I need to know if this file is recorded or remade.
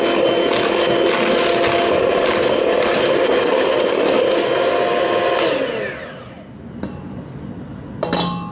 recorded